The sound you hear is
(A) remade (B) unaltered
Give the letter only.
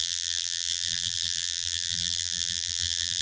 A